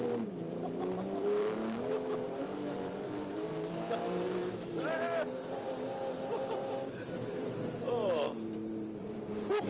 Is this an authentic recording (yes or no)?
no